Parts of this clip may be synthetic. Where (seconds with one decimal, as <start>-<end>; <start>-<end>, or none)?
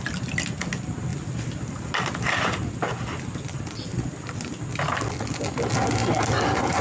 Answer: none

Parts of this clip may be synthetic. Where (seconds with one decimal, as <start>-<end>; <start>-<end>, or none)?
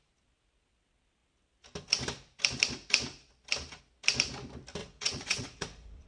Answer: 4.8-6.1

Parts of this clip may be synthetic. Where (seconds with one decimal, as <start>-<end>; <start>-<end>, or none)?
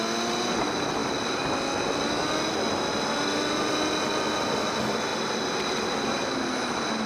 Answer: none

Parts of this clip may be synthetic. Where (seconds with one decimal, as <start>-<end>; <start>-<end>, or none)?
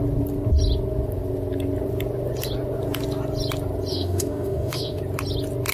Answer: 3.9-5.0